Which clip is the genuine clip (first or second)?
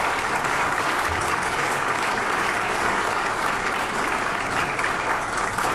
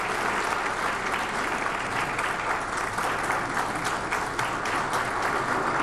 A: second